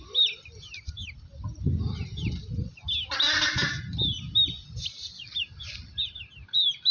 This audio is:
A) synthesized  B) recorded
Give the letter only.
B